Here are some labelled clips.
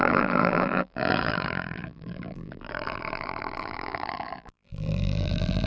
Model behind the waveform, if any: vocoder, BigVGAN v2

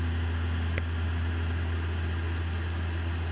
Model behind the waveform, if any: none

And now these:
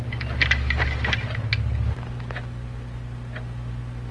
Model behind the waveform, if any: none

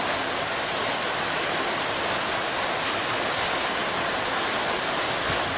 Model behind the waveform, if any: none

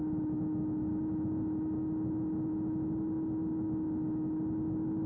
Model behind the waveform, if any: none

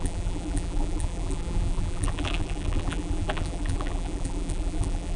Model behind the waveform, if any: vocoder, BigVGAN v2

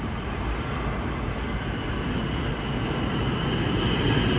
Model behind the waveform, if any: none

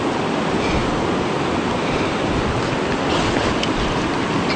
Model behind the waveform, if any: none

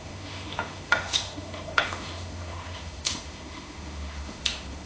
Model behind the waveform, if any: autoencoder, DAC-VAE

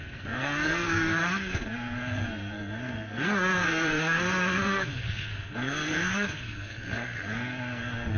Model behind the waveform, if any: codec, SNAC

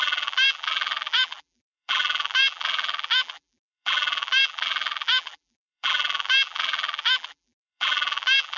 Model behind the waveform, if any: vocoder, BigVGAN v2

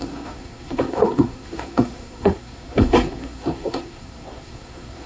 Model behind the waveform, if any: codec, SNAC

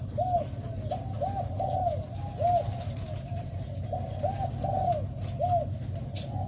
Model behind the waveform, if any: none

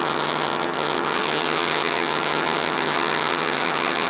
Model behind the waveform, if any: vocoder, HiFi-GAN